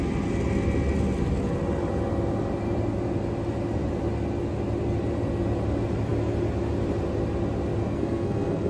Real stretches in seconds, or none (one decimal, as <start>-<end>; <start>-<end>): 0.0-7.8